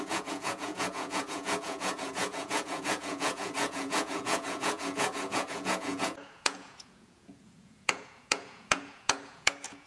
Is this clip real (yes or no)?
no